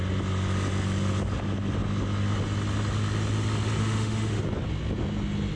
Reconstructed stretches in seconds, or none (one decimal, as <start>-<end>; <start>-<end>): 3.8-4.4